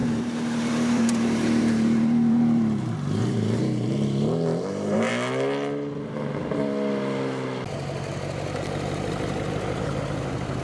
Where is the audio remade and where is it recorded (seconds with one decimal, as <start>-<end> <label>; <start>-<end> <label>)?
0.0-5.1 remade; 5.1-10.6 recorded